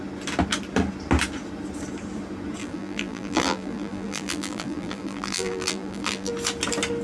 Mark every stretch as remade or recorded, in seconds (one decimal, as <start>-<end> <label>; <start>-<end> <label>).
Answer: 0.0-2.6 recorded; 2.6-6.3 remade; 6.3-7.0 recorded